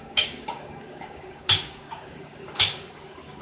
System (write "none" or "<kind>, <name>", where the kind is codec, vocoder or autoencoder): codec, DAC